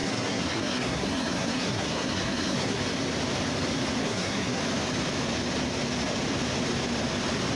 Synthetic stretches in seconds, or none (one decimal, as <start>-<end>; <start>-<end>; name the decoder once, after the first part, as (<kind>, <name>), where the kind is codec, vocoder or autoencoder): 0.0-2.8 (codec, SNAC); 4.0-4.6